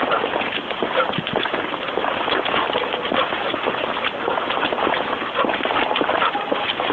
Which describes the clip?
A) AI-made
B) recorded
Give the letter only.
B